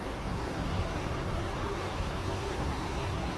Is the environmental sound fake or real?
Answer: fake